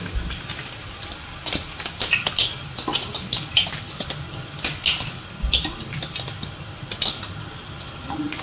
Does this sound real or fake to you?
real